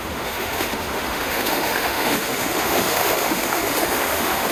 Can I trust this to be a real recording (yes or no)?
no